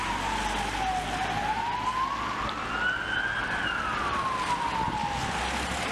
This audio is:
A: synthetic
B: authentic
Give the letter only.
B